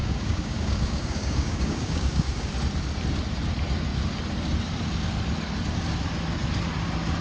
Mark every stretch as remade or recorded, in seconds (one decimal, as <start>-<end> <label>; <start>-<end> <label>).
0.0-2.5 remade; 2.5-7.2 recorded